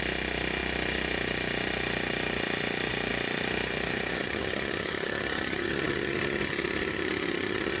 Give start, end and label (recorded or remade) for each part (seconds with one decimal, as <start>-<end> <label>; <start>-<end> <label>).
0.0-4.2 recorded; 4.2-7.8 remade

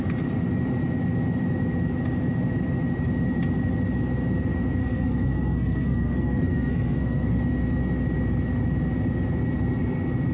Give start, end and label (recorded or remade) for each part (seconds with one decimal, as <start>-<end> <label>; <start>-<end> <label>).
0.0-4.8 recorded; 4.8-7.4 remade; 7.4-10.3 recorded

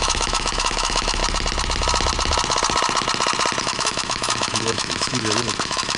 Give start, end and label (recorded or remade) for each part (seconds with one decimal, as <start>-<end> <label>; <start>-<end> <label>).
0.0-1.2 remade; 1.2-3.6 recorded; 3.6-6.0 remade

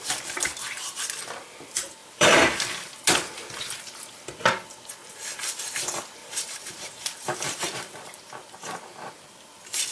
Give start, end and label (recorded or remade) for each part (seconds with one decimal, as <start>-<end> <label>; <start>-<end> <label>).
0.0-2.0 recorded; 2.0-2.9 remade; 2.9-5.0 recorded; 5.0-5.5 remade; 5.5-6.2 recorded; 6.2-9.1 remade; 9.1-9.9 recorded

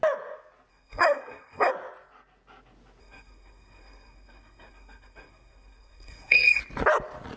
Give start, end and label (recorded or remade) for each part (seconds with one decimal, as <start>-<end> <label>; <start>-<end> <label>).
0.0-0.7 recorded; 0.7-1.7 remade; 1.7-3.0 recorded; 3.0-6.6 remade; 6.6-7.4 recorded

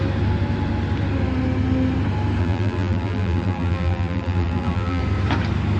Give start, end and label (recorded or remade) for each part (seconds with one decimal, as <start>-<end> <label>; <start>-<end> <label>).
0.0-2.4 recorded; 2.4-5.0 remade; 5.0-5.8 recorded

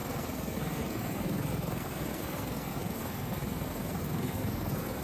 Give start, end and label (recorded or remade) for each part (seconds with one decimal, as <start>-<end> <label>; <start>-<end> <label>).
0.0-5.0 remade

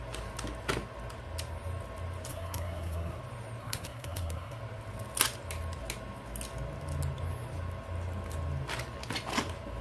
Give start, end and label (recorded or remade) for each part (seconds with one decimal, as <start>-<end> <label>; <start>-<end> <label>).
0.0-2.3 recorded; 2.3-3.2 remade; 3.2-3.6 recorded; 3.6-4.6 remade; 4.6-9.8 recorded